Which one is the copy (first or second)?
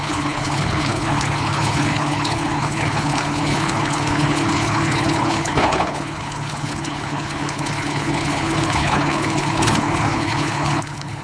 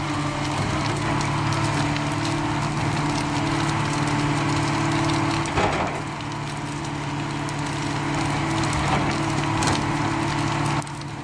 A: first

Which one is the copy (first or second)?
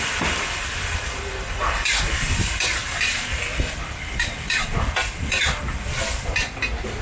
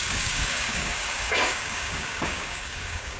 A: second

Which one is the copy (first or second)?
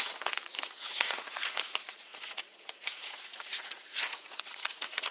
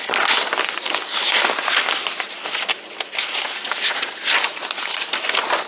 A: first